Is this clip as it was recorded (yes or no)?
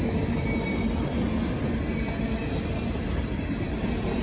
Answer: yes